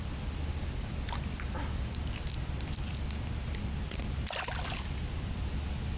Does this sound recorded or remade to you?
recorded